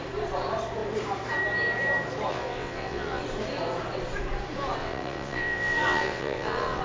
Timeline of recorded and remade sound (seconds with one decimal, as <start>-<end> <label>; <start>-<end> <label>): 0.0-2.3 recorded; 2.3-3.2 remade; 3.2-4.8 recorded; 4.8-6.8 remade